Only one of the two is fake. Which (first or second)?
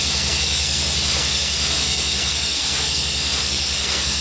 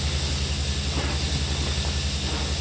first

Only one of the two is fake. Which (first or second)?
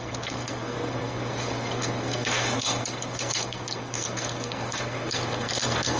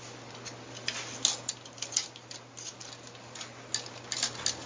first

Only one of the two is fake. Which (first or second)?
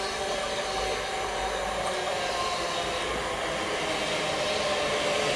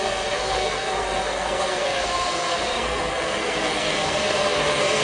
second